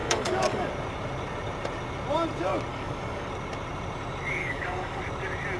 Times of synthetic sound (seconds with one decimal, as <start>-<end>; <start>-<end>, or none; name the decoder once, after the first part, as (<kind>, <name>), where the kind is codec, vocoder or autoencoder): 0.0-0.7 (codec, DAC); 2.7-3.3; 4.4-5.0